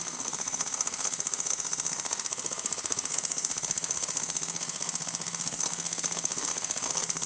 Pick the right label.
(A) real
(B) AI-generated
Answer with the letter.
B